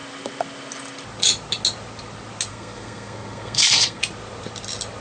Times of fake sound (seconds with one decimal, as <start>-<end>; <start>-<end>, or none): 2.5-4.0